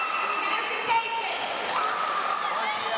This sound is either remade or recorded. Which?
recorded